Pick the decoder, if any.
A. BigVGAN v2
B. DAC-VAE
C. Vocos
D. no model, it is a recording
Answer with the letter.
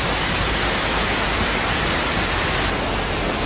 D